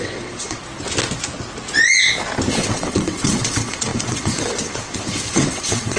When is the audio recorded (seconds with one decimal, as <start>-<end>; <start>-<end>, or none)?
0.6-2.5